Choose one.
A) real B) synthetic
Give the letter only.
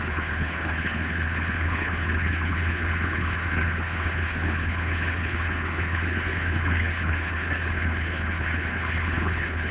B